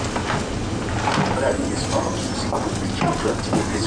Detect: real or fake real